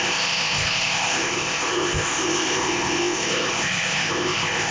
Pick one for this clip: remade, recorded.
remade